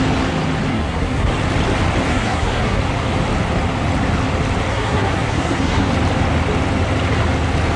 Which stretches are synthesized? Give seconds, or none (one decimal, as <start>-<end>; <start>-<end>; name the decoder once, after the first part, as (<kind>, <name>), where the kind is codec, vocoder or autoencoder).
0.7-1.3 (codec, SNAC); 2.1-2.8; 4.7-5.9